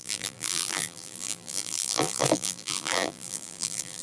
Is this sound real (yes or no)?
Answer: no